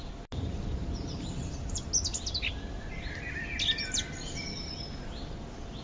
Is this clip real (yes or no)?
yes